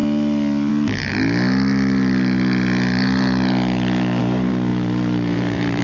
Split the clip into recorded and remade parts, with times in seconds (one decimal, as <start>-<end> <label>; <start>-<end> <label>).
0.0-0.7 recorded; 0.7-1.1 remade; 1.1-4.2 recorded; 4.2-5.8 remade